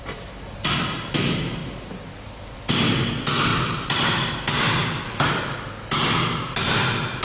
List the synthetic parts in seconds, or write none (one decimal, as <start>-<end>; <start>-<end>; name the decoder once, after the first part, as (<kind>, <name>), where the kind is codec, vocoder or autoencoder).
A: 3.5-4.3 (vocoder, BigVGAN v2); 4.8-5.4